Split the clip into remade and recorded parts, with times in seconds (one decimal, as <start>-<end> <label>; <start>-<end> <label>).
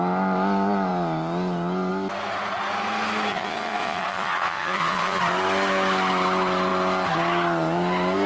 0.0-3.3 recorded; 3.3-5.2 remade; 5.2-8.3 recorded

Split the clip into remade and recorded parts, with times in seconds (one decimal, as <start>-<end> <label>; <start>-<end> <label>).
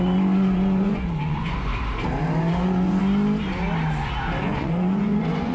0.0-1.7 remade; 1.7-2.4 recorded; 2.4-3.0 remade; 3.0-4.4 recorded; 4.4-5.5 remade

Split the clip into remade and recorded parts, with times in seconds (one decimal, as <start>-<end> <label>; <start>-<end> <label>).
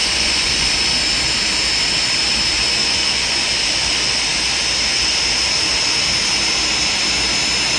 0.0-0.7 remade; 0.7-2.8 recorded; 2.8-3.5 remade; 3.5-7.8 recorded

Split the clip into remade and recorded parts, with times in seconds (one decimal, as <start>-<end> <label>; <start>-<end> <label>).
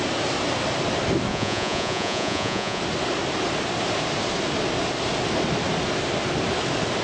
0.0-1.3 recorded; 1.3-2.8 remade; 2.8-7.0 recorded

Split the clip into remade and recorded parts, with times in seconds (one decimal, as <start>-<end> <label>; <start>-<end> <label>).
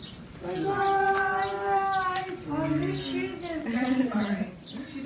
0.0-3.6 recorded; 3.6-4.4 remade; 4.4-5.1 recorded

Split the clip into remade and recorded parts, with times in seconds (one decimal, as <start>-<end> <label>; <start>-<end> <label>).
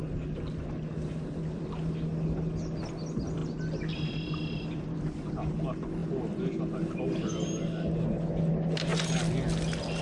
0.0-10.0 recorded